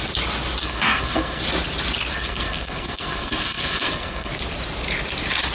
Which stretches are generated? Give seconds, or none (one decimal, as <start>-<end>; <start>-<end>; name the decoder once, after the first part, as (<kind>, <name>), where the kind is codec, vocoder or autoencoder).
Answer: 0.6-1.4 (codec, SNAC); 2.1-4.3